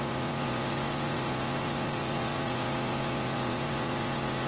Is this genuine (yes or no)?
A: no